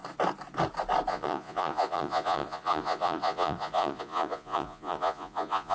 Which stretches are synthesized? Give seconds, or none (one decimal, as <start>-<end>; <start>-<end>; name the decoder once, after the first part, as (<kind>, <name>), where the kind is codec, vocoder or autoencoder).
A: 1.1-5.7 (vocoder, Vocos)